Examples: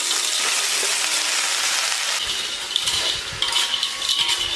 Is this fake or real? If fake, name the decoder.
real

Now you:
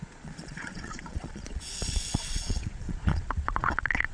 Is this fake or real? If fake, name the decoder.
fake, vocoder, Vocos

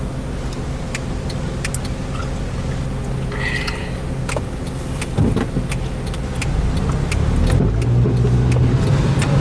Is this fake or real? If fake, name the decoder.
real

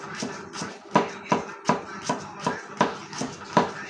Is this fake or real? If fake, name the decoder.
real